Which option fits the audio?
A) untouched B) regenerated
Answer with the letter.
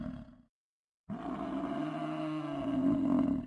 A